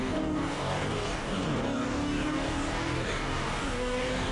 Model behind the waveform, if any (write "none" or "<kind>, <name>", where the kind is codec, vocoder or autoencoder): codec, DAC